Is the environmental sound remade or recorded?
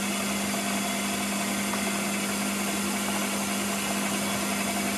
recorded